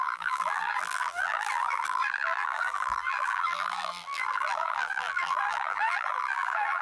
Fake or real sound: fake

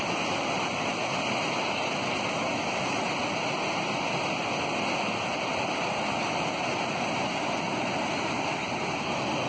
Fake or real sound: real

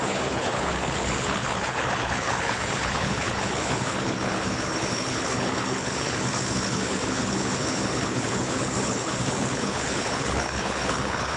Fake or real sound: fake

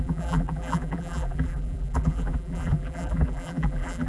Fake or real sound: fake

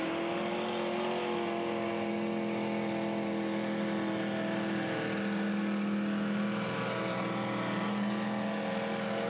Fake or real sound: real